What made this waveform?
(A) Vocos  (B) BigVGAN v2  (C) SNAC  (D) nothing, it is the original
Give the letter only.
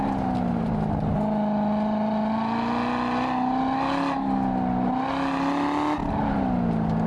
D